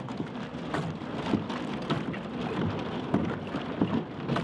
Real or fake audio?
real